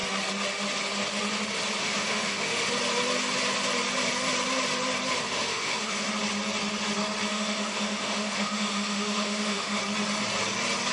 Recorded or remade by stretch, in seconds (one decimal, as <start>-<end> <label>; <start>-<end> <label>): 0.0-1.8 recorded; 1.8-2.7 remade; 2.7-5.1 recorded; 5.1-6.1 remade; 6.1-7.3 recorded; 7.3-9.8 remade; 9.8-10.9 recorded